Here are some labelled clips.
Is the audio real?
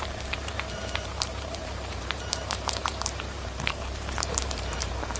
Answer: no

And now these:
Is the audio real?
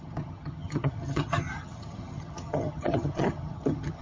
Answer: no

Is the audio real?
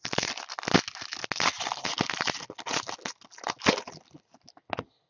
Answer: yes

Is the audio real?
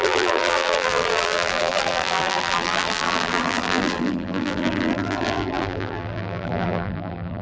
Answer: no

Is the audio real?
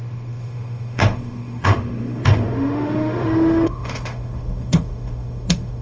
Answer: no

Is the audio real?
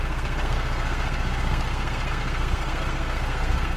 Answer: no